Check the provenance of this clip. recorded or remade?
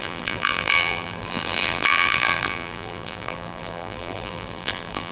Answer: remade